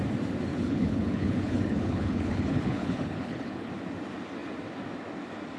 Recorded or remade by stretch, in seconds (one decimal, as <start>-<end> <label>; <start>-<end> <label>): 0.0-0.5 recorded; 0.5-3.7 remade; 3.7-5.6 recorded